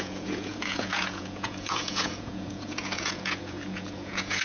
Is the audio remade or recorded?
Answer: remade